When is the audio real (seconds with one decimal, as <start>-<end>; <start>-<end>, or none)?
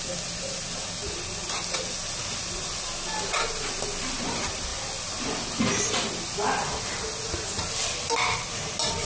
0.0-9.0